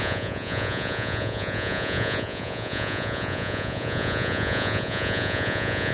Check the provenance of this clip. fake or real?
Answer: fake